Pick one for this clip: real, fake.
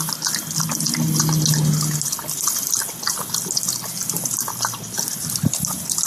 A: real